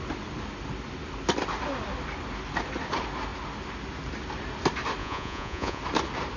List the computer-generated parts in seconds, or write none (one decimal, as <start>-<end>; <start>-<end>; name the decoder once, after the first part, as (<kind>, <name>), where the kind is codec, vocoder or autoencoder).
5.0-5.8 (vocoder, Vocos)